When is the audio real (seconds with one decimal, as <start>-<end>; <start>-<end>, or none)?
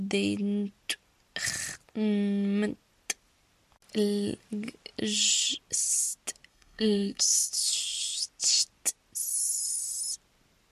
0.0-6.5; 7.5-10.7